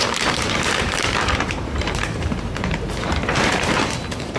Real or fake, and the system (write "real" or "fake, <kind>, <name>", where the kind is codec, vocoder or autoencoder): fake, vocoder, BigVGAN v2